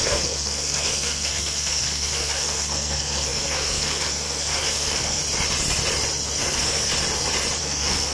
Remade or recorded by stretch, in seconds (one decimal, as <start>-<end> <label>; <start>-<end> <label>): 0.0-5.2 remade; 5.2-6.4 recorded; 6.4-6.9 remade; 6.9-7.6 recorded; 7.6-8.1 remade